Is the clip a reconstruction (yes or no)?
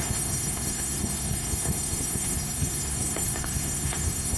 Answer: yes